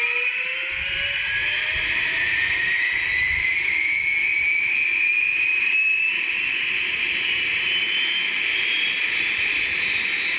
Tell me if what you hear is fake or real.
fake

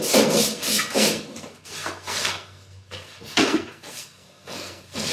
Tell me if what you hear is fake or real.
fake